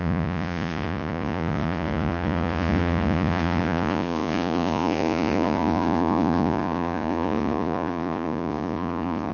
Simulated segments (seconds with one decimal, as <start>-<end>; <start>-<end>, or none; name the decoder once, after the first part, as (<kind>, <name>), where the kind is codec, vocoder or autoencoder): 0.0-9.3 (vocoder, Vocos)